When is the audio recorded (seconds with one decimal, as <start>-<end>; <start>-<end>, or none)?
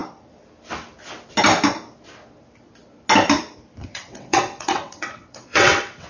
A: 0.0-3.8